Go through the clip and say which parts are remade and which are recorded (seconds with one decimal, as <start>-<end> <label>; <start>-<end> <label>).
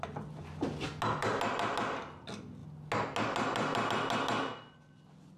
0.0-5.4 recorded